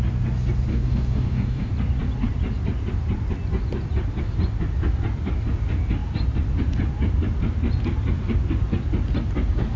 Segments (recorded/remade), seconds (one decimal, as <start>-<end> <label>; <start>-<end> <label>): 0.0-0.7 recorded; 0.7-1.7 remade; 1.7-9.8 recorded